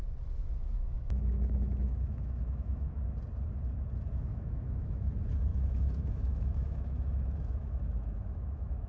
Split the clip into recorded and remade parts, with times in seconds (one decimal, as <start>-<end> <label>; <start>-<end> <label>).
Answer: 0.0-0.7 recorded; 0.7-3.0 remade; 3.0-4.3 recorded; 4.3-5.1 remade; 5.1-5.5 recorded; 5.5-8.9 remade